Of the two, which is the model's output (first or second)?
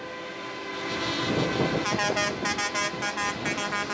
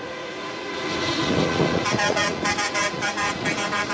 second